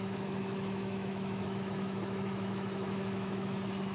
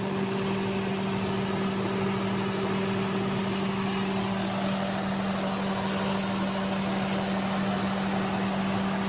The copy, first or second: first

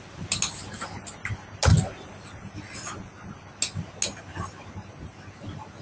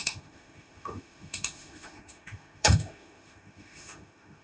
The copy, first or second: second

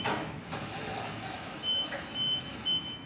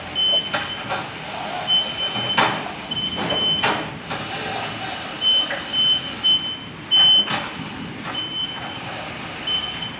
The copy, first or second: first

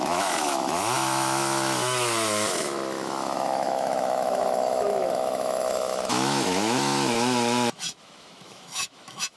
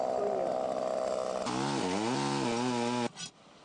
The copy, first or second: first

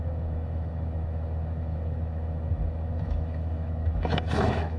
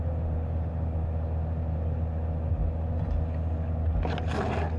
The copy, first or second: first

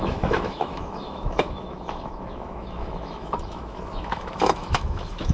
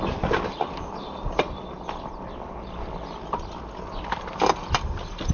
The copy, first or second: first